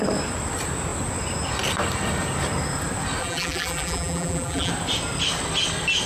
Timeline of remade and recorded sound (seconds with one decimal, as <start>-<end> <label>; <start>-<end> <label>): 0.0-3.2 recorded; 3.2-4.7 remade; 4.7-6.1 recorded